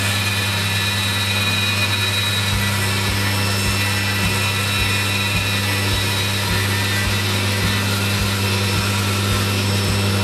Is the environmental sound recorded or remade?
recorded